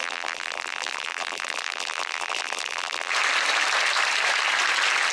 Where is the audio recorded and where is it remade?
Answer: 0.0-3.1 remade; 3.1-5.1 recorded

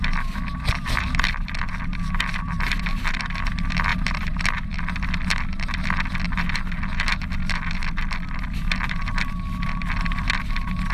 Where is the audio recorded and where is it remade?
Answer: 0.0-3.9 recorded; 3.9-4.8 remade; 4.8-10.9 recorded

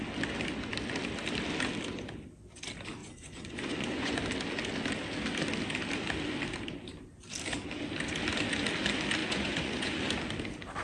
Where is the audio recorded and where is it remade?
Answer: 0.0-3.0 recorded; 3.0-4.1 remade; 4.1-9.2 recorded; 9.2-10.0 remade; 10.0-10.8 recorded

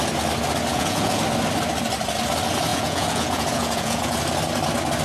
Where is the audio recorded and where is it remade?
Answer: 0.0-0.7 recorded; 0.7-1.2 remade; 1.2-2.7 recorded; 2.7-4.2 remade; 4.2-5.0 recorded

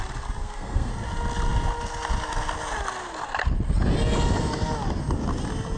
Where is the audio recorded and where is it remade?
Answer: 0.0-0.4 recorded; 0.4-0.9 remade; 0.9-5.8 recorded

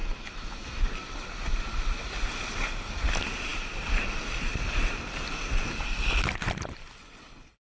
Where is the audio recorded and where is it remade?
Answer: 0.0-0.8 remade; 0.8-7.8 recorded

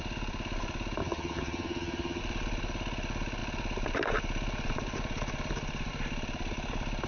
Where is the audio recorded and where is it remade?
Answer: 0.0-1.0 recorded; 1.0-2.2 remade; 2.2-7.1 recorded